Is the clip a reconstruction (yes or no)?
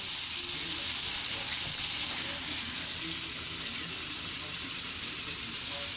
yes